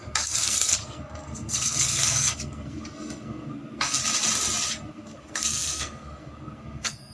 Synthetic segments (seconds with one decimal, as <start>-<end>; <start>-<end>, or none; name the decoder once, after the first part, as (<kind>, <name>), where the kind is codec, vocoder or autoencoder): 0.0-4.0 (codec, SNAC); 4.7-7.1